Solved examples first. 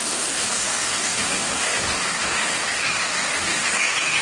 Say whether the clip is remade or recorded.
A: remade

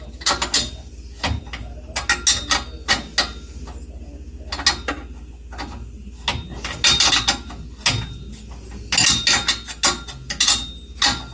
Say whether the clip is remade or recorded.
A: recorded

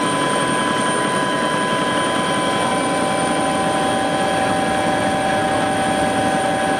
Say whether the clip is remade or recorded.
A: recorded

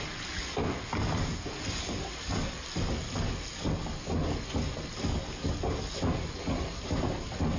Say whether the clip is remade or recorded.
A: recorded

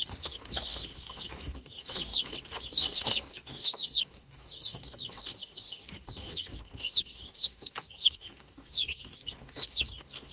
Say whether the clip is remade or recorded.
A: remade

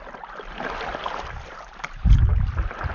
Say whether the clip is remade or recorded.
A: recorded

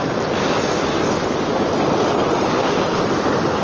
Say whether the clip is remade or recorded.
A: recorded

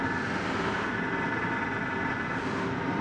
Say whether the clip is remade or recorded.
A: recorded